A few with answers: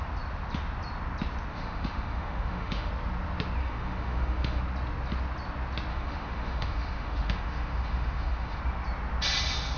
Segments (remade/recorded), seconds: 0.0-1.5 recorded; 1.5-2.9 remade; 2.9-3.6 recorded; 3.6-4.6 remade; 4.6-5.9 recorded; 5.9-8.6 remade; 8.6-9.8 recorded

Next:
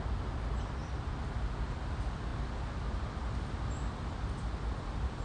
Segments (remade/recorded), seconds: 0.0-5.2 recorded

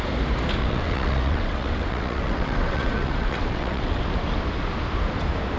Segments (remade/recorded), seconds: 0.0-0.6 recorded; 0.6-4.0 remade; 4.0-5.6 recorded

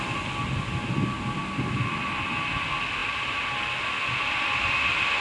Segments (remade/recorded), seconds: 0.0-5.2 recorded

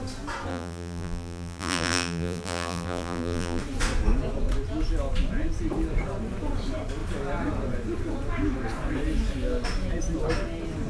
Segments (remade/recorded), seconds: 0.0-0.5 recorded; 0.5-3.6 remade; 3.6-10.9 recorded

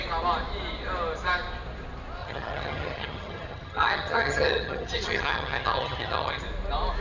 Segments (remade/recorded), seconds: 0.0-2.2 recorded; 2.2-6.4 remade; 6.4-7.0 recorded

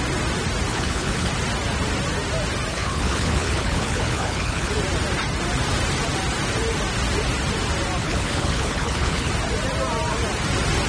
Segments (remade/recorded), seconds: 0.0-0.7 recorded; 0.7-1.3 remade; 1.3-2.7 recorded; 2.7-4.7 remade; 4.7-8.0 recorded; 8.0-9.3 remade; 9.3-10.9 recorded